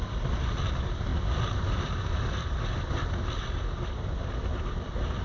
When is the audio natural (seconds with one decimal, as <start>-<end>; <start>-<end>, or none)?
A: 0.0-5.2